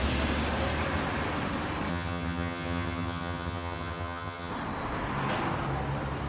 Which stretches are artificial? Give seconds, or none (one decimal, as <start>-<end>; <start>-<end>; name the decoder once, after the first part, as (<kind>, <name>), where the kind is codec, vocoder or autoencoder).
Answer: 1.9-4.5 (vocoder, HiFi-GAN)